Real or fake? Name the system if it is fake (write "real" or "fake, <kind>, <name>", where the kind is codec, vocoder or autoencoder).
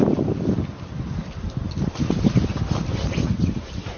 real